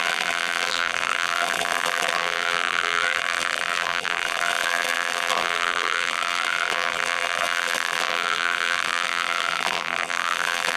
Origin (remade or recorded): remade